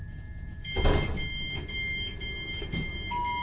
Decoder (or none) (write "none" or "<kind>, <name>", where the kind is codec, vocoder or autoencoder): none